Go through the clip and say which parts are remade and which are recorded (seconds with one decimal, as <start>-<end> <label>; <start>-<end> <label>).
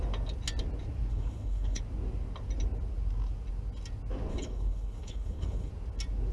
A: 0.0-1.1 recorded; 1.1-1.8 remade; 1.8-4.3 recorded; 4.3-5.7 remade; 5.7-6.3 recorded